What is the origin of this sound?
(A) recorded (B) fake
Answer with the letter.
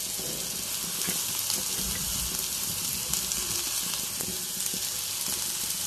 A